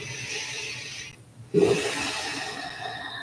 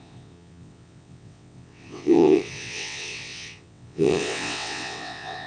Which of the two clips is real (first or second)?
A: first